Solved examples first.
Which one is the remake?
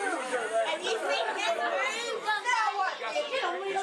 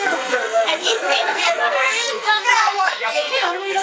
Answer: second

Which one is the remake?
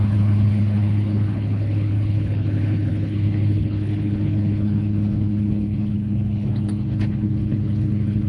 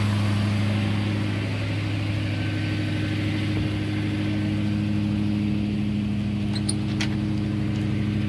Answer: first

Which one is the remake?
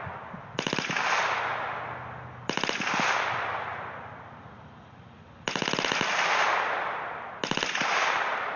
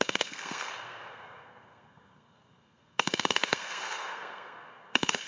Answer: second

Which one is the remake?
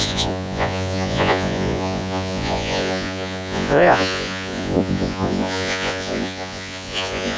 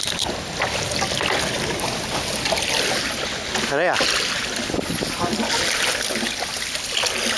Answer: first